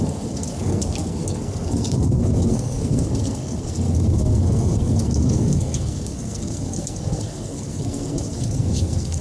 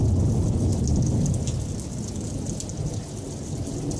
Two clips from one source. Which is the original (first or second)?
second